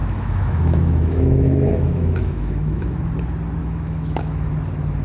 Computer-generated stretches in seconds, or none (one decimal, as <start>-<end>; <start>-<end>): 0.0-3.0; 3.6-4.5